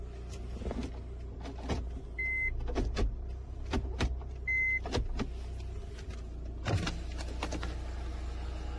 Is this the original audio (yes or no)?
yes